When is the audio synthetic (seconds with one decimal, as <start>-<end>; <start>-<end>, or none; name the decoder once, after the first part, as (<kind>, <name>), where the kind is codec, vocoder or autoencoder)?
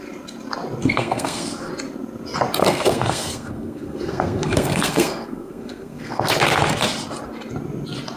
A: 0.8-1.7 (codec, SNAC); 2.6-6.3